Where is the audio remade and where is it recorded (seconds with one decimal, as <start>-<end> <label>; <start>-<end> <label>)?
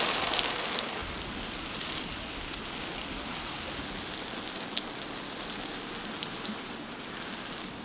0.0-1.0 recorded; 1.0-2.4 remade; 2.4-7.8 recorded